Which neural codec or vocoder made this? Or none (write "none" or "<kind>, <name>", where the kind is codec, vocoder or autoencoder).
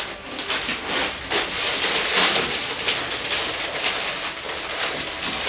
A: none